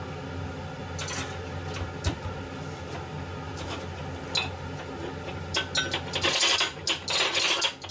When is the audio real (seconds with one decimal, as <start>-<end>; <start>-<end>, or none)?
0.0-7.9